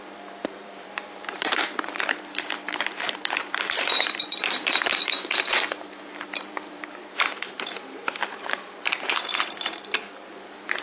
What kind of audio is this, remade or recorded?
remade